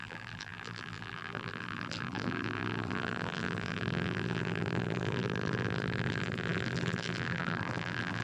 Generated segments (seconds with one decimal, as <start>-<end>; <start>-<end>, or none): 0.0-8.2

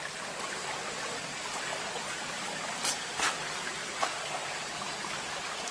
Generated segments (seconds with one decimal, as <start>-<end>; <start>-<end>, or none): none

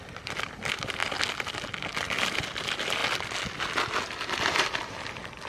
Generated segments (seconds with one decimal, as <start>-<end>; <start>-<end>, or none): 0.0-1.0; 1.9-3.0; 3.8-5.5

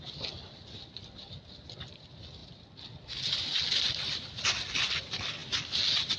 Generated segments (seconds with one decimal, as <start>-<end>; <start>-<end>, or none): none

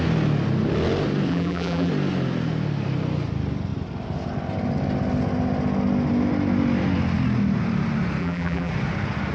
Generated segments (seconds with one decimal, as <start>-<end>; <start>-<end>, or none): 1.3-1.9; 8.2-8.7

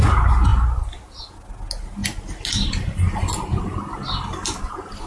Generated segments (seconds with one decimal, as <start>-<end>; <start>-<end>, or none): none

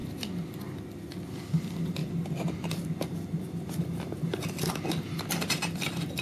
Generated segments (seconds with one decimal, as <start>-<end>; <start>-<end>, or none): none